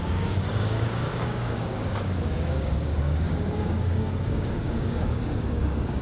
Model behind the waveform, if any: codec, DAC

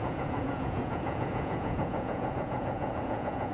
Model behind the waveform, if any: vocoder, Vocos